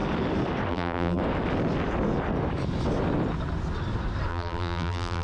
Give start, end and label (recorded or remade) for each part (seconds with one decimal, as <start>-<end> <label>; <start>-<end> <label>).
0.0-0.7 recorded; 0.7-1.2 remade; 1.2-4.3 recorded; 4.3-5.2 remade